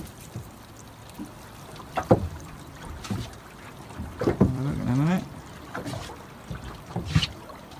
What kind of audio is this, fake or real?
fake